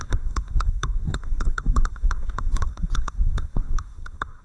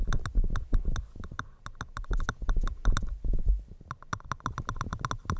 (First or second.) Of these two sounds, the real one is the second